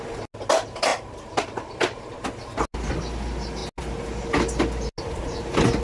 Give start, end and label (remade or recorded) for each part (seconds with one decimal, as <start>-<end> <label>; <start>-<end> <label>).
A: 0.0-0.9 recorded; 0.9-1.8 remade; 1.8-5.8 recorded